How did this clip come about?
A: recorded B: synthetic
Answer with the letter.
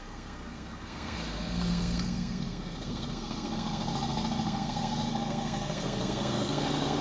B